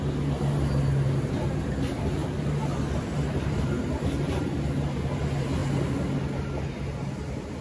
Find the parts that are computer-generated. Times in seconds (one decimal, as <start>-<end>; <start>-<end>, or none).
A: 2.2-4.6